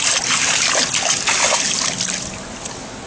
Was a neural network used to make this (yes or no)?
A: no